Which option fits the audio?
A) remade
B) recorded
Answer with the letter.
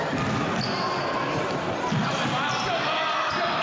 B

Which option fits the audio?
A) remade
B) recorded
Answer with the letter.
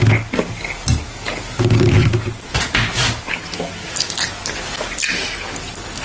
B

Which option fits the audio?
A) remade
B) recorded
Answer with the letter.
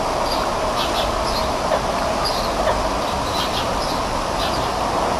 B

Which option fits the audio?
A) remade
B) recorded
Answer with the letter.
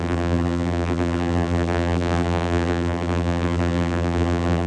A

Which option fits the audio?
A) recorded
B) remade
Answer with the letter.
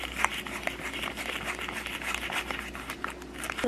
A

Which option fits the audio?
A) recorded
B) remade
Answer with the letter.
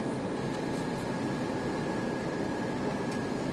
A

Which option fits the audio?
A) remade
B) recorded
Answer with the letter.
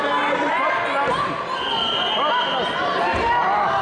B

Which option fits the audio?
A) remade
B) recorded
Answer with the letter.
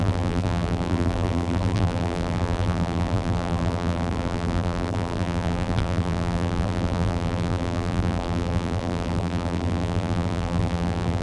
A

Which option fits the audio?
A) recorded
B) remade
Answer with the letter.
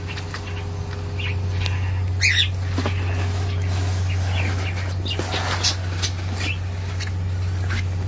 A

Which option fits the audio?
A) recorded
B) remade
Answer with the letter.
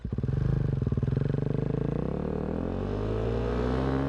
A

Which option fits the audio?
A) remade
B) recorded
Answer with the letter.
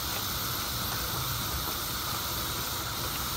B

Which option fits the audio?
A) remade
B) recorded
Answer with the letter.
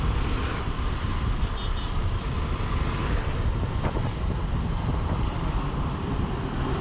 A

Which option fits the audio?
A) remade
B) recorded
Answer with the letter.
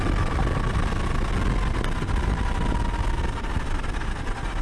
B